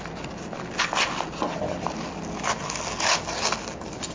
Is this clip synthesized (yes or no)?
no